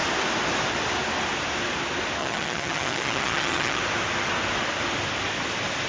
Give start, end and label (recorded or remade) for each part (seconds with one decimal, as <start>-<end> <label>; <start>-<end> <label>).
0.0-2.2 recorded; 2.2-3.8 remade; 3.8-5.9 recorded